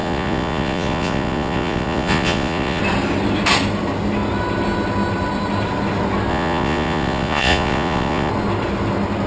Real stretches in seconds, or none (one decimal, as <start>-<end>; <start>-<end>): 2.8-6.3; 8.3-9.3